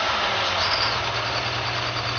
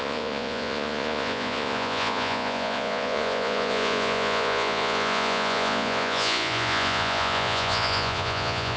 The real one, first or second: first